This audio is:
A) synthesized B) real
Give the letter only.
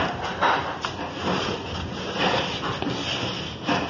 B